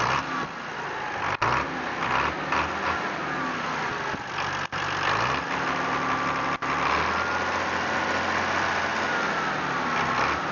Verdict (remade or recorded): recorded